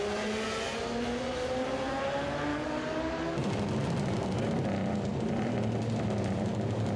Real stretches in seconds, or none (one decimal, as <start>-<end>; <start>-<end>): 0.0-2.5; 3.0-7.0